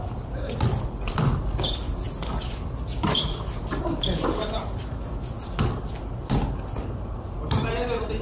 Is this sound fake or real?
real